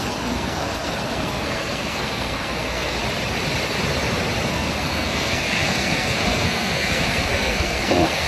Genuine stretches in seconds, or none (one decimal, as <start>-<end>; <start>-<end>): 3.0-4.5

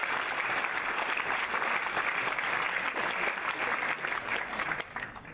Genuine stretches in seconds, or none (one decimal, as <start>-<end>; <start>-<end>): 0.0-5.3

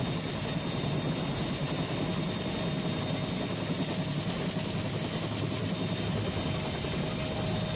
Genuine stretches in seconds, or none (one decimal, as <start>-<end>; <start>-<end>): 0.0-7.8

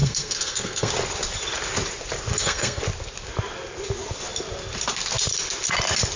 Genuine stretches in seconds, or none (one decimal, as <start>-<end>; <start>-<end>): 0.9-2.3; 2.8-6.2

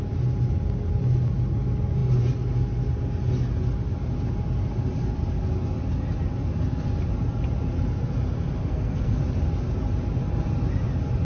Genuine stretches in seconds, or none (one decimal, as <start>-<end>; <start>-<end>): 0.0-8.6; 9.2-11.2

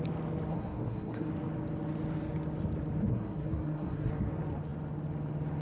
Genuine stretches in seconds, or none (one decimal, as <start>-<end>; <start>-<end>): 0.0-0.5; 1.3-3.0; 4.1-5.6